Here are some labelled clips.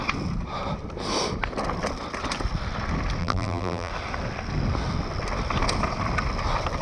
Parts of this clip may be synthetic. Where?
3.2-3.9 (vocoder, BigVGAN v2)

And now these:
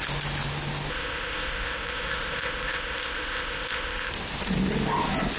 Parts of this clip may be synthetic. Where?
0.9-4.1 (codec, ZipCodec)

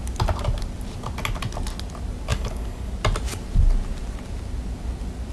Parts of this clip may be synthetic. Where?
2.3-2.9 (codec, DAC)